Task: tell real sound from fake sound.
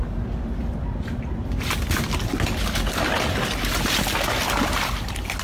real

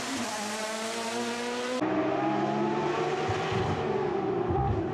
real